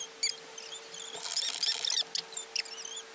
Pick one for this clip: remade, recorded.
recorded